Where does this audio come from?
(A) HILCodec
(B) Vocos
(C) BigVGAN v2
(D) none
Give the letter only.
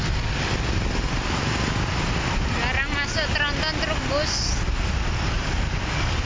D